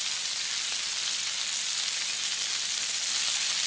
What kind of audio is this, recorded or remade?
recorded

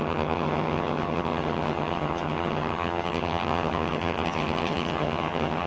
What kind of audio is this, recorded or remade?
remade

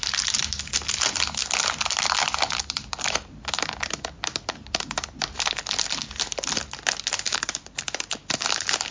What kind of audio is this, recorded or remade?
recorded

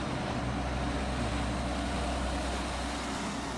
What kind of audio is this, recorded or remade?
recorded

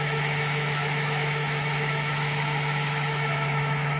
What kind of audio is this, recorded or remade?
remade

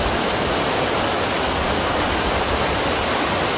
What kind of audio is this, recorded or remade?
recorded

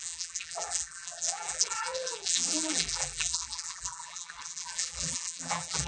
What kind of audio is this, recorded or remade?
remade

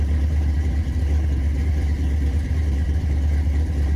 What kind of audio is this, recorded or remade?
remade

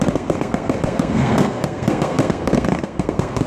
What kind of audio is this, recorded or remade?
remade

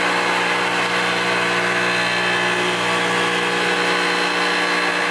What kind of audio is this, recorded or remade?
recorded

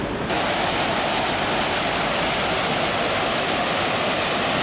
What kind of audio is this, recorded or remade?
recorded